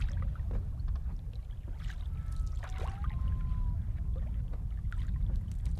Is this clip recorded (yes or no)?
yes